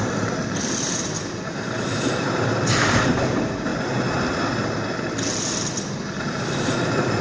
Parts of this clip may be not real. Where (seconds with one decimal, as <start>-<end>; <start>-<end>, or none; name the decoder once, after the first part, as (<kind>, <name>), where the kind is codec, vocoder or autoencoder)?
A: 0.0-3.7 (vocoder, BigVGAN v2)